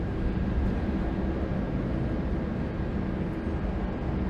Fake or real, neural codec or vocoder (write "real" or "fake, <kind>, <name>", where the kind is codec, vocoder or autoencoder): real